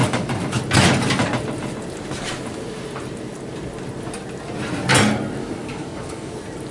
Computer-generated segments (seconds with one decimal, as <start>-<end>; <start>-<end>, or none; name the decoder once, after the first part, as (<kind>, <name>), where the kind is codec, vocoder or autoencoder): 0.0-0.6 (codec, DAC); 5.4-6.3